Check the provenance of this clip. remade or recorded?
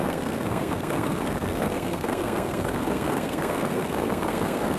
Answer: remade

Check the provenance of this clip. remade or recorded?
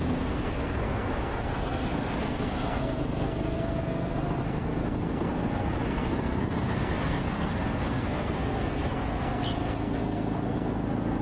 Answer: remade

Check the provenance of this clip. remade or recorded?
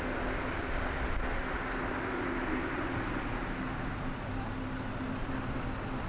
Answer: recorded